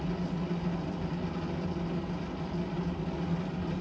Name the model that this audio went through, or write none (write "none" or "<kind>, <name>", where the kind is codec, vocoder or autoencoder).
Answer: none